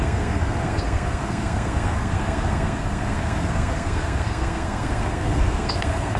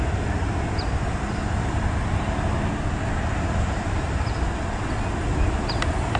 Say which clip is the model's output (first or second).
first